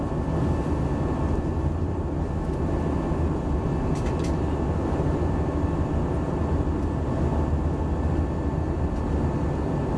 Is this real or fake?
real